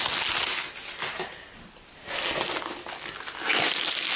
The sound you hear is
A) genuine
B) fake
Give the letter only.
A